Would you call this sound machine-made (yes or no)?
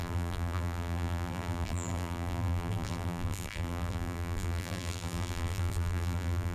yes